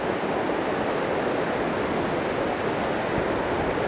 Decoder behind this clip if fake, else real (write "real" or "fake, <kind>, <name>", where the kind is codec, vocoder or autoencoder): real